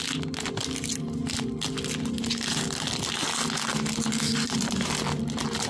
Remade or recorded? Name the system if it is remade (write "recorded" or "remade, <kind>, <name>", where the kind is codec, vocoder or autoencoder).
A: recorded